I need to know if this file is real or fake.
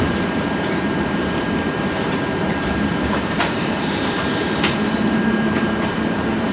fake